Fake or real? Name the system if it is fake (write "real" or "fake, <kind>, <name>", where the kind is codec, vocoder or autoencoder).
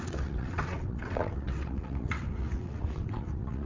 fake, vocoder, WaveNeXt